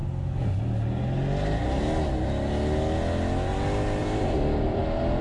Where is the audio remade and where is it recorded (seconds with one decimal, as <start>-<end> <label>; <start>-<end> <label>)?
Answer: 0.0-4.0 recorded; 4.0-4.8 remade; 4.8-5.2 recorded